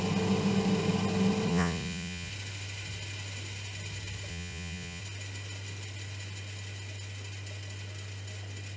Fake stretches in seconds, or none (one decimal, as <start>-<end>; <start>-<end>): 1.5-2.3; 4.3-5.0